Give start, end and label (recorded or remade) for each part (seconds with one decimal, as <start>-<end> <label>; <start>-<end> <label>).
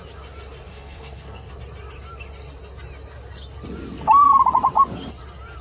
0.0-0.7 recorded; 0.7-1.5 remade; 1.5-5.6 recorded